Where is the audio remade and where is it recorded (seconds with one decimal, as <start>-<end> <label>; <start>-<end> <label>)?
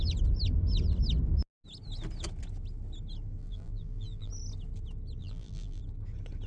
0.0-3.4 recorded; 3.4-4.3 remade; 4.3-5.2 recorded; 5.2-5.8 remade; 5.8-6.5 recorded